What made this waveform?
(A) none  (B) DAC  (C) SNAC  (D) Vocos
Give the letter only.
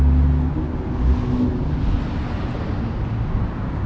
A